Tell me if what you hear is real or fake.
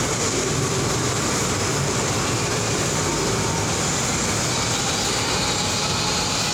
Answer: real